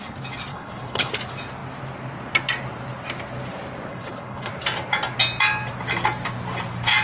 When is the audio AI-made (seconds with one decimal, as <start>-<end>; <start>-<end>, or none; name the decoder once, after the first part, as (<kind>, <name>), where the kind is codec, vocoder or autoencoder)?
0.5-1.1 (codec, HILCodec); 3.9-4.5